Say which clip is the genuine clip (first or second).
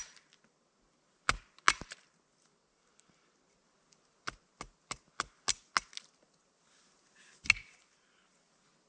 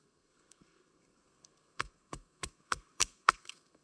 first